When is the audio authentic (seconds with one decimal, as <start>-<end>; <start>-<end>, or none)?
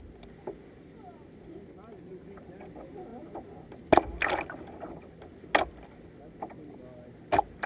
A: 0.0-7.7